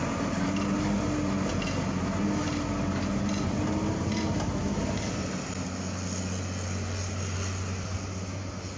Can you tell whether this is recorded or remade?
recorded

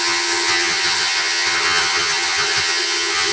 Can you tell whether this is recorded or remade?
remade